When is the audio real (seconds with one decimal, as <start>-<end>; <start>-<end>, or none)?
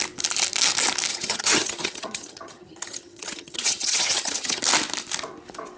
0.0-1.1; 4.6-5.8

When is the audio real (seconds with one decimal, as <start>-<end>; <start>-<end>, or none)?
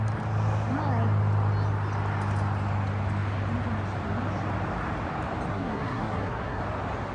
0.0-5.5; 6.6-7.1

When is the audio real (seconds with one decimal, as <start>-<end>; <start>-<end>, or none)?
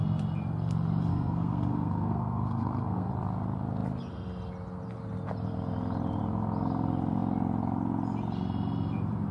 0.0-1.1; 3.1-9.3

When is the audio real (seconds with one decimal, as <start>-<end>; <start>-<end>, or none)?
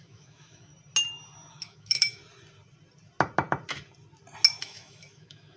0.7-1.5; 2.2-4.6